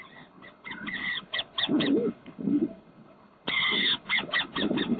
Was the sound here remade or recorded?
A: remade